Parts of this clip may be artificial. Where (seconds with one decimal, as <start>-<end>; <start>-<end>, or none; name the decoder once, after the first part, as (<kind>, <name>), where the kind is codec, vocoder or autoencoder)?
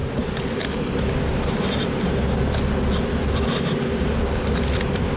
none